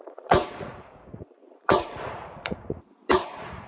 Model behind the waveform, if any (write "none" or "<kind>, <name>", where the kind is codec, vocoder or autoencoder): vocoder, Vocos